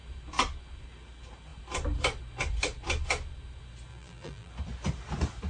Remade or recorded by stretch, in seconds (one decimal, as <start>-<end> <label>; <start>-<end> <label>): 0.0-3.9 recorded; 3.9-4.5 remade; 4.5-5.5 recorded